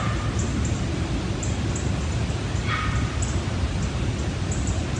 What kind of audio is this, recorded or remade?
recorded